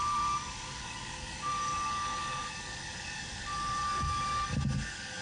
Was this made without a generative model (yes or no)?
no